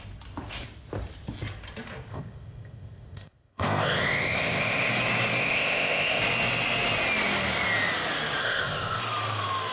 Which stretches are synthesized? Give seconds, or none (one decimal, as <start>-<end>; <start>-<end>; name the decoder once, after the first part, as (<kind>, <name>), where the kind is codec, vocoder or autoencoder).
2.1-4.9 (codec, ZipCodec); 5.4-6.2; 8.4-9.0